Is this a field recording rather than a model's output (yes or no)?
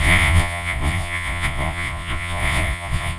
no